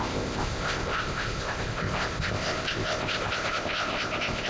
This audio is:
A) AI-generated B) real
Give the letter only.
A